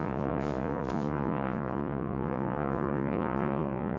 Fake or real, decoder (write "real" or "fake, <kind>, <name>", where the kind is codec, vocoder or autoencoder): fake, vocoder, Vocos